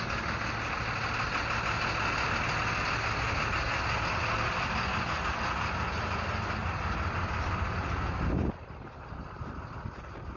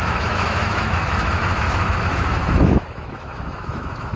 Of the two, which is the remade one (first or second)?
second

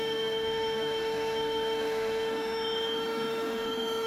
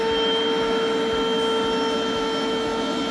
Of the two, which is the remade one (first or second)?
first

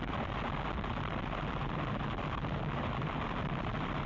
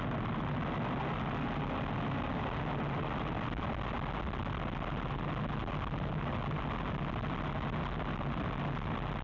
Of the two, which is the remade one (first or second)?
first